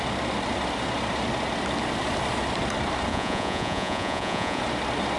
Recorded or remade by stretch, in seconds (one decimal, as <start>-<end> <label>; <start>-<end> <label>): 0.0-3.1 recorded; 3.1-4.6 remade; 4.6-5.2 recorded